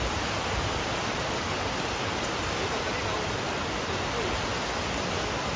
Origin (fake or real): real